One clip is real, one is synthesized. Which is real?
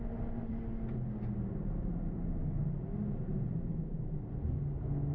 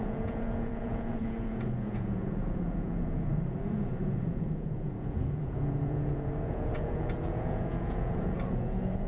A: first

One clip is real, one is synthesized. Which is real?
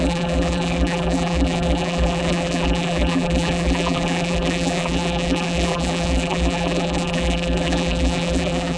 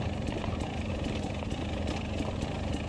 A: second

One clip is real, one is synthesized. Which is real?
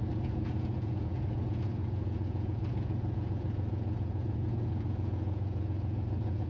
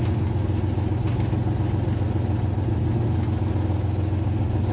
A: second